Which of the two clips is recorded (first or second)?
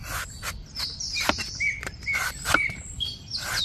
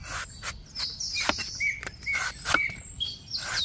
second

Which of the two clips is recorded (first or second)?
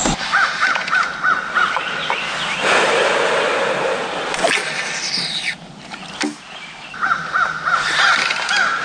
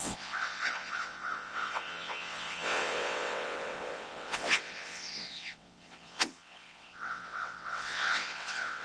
first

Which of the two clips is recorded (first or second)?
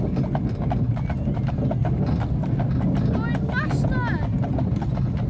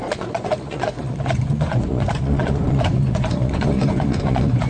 first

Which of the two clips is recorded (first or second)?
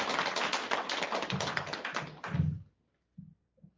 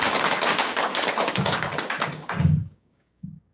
first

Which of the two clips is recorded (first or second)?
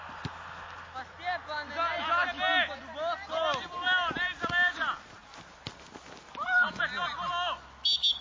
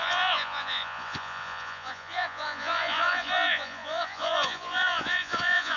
first